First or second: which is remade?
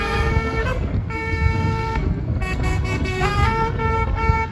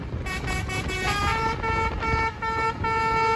first